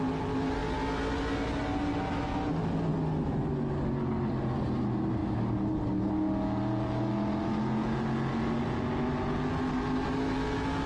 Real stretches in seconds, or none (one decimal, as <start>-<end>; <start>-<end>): 0.0-10.9